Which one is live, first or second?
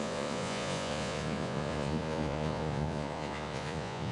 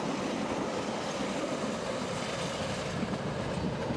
second